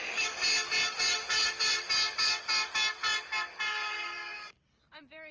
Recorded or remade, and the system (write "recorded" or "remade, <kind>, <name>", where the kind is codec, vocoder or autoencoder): recorded